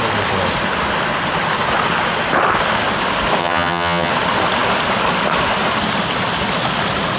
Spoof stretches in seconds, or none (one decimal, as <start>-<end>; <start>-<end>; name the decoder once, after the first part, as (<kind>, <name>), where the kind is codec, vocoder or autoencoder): 3.4-4.1 (vocoder, HiFi-GAN)